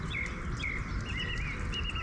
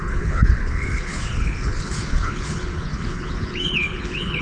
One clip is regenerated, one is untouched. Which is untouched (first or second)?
first